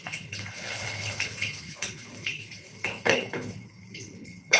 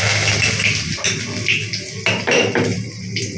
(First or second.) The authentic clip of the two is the second